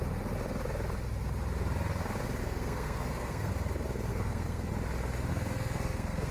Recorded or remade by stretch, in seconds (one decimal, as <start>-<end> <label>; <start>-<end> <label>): 0.0-2.4 recorded; 2.4-3.5 remade; 3.5-4.1 recorded; 4.1-4.7 remade; 4.7-5.3 recorded; 5.3-6.3 remade